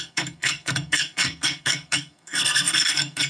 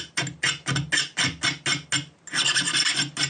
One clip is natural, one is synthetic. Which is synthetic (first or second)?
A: first